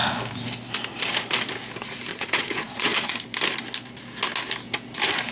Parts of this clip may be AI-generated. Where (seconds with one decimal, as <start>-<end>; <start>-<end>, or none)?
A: 2.1-3.1